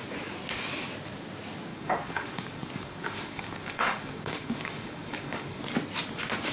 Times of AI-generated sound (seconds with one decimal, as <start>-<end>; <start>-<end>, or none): 1.7-5.6